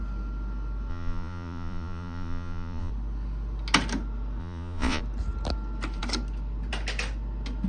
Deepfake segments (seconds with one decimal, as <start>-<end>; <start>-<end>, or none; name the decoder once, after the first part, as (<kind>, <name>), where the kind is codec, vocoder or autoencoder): 0.9-2.9 (vocoder, Vocos); 4.4-5.0